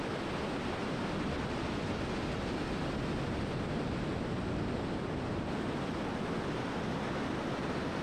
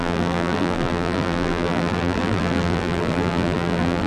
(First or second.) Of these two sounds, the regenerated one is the second